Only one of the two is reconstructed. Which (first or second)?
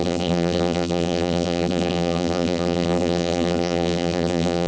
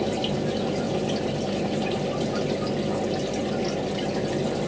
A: first